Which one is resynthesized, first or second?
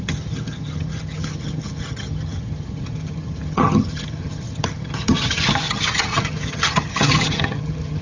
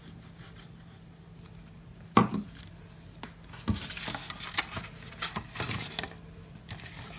first